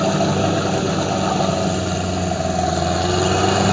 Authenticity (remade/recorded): recorded